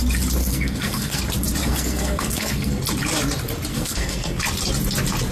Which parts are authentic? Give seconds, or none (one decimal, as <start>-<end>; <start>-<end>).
0.0-0.4; 1.2-1.6; 2.8-3.7; 4.4-5.3